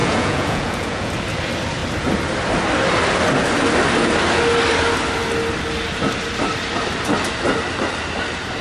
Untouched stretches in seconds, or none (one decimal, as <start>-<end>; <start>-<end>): 1.1-8.6